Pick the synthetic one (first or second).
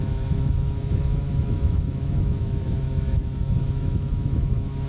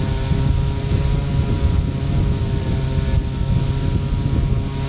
first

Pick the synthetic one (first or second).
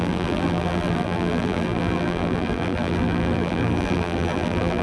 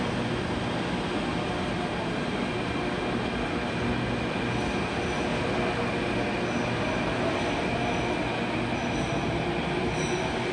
first